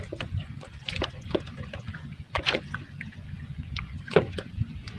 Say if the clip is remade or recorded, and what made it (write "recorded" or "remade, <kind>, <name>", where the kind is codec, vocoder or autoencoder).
remade, vocoder, Vocos